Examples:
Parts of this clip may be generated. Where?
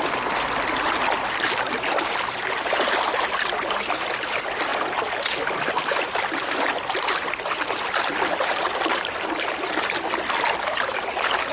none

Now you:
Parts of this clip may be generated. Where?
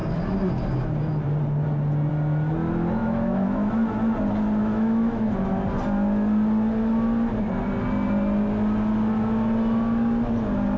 3.0-3.7; 4.6-5.3